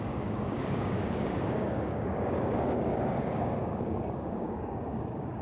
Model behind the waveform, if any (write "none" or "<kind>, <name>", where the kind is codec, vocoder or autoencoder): codec, DAC